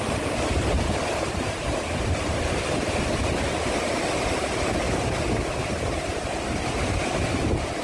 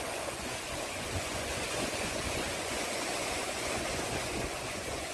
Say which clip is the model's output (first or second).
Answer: second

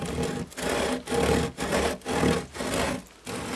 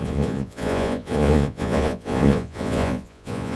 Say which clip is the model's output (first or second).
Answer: second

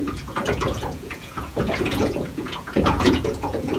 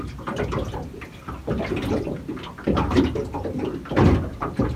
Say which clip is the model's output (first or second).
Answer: first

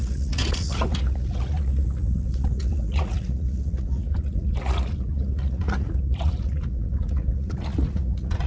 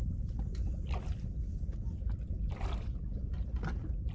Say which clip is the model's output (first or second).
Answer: first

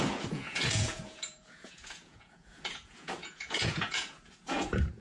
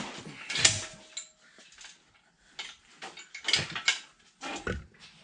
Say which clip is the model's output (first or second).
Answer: first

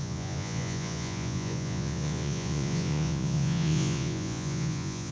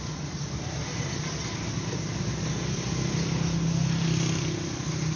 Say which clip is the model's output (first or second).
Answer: first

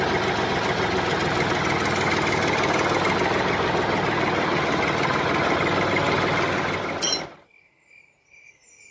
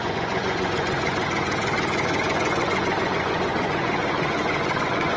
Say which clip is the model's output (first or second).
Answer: second